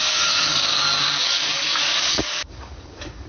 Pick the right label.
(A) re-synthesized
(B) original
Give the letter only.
A